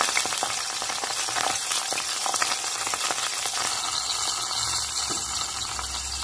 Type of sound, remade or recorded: recorded